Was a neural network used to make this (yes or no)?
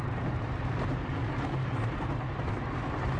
yes